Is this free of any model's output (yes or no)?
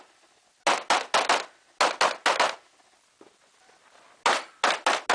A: yes